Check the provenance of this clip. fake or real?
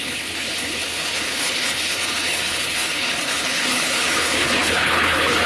fake